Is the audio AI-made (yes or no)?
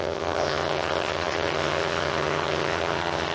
yes